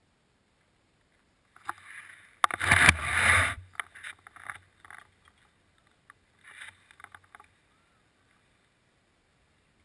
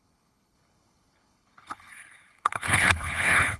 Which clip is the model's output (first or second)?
second